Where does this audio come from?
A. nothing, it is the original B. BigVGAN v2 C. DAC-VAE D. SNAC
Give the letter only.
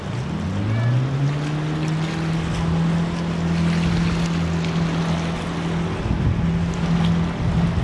A